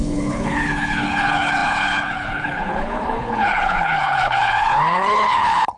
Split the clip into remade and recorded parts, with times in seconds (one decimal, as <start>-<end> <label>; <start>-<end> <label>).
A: 0.0-5.8 remade